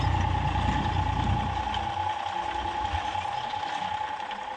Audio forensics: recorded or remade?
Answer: recorded